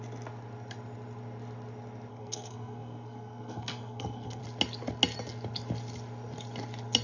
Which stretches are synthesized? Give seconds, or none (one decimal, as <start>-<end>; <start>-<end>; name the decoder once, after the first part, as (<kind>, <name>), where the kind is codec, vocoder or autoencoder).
2.1-4.4 (codec, SNAC)